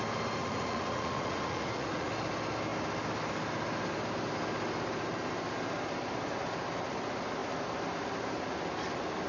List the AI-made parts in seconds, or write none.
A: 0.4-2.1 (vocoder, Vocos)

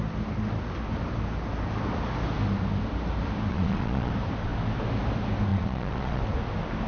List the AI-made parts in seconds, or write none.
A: 3.5-4.1 (vocoder, Vocos); 5.5-6.2

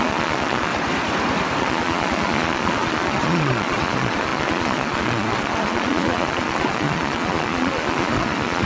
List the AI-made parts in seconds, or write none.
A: 0.0-0.7 (vocoder, Vocos); 1.6-8.7

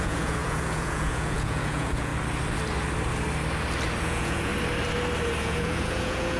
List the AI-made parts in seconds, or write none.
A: 0.0-2.1 (vocoder, Vocos); 4.0-4.5; 5.4-6.4

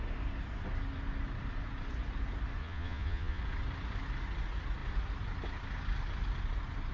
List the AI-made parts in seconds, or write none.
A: 2.6-3.4 (vocoder, Vocos)

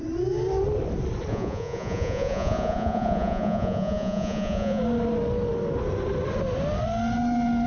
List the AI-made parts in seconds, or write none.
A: 1.3-4.8 (vocoder, Vocos)

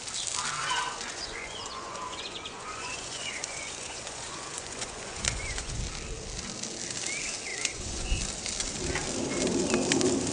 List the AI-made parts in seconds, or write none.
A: 0.6-5.8 (vocoder, Vocos); 7.5-8.2

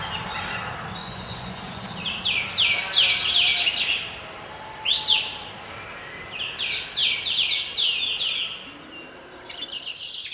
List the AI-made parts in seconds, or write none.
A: 1.0-1.9 (vocoder, Vocos)